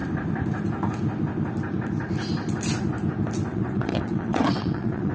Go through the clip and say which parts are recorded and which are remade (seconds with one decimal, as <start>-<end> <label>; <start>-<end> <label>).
0.0-3.5 recorded; 3.5-5.1 remade